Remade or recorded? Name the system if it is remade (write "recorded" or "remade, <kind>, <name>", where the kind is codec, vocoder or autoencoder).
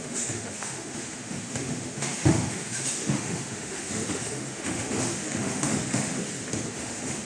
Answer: remade, autoencoder, DAC-VAE